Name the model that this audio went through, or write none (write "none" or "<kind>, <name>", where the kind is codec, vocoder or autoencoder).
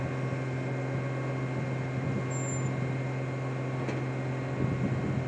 none